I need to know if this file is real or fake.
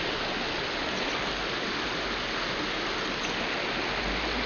real